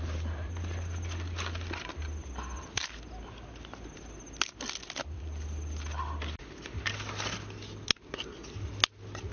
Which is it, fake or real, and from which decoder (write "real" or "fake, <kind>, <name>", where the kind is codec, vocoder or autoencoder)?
real